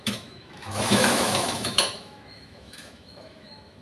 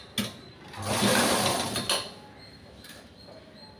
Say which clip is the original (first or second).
second